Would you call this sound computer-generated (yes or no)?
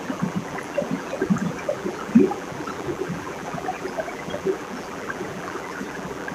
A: yes